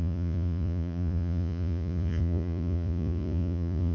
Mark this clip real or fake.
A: fake